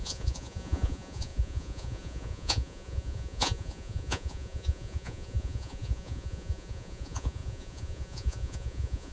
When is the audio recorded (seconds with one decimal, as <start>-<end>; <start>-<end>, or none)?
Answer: none